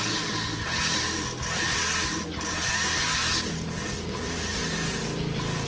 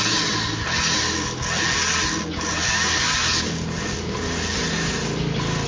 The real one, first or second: second